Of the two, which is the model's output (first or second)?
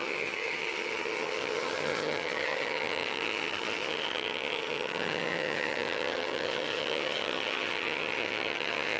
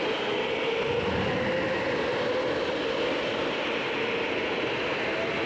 first